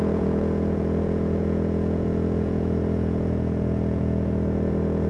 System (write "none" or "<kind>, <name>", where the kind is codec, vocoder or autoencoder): vocoder, Vocos